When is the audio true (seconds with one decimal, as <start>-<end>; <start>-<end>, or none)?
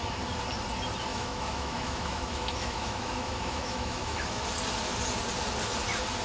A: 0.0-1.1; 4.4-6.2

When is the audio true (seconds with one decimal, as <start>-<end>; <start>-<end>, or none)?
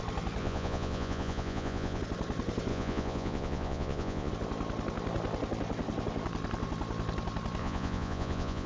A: 0.0-0.4; 2.0-2.7; 4.3-7.6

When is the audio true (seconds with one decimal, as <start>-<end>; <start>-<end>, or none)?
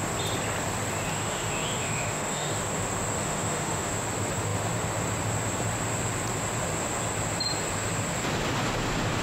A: 0.0-1.1; 2.6-3.2; 3.9-9.2